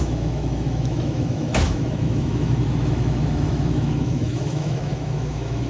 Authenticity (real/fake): fake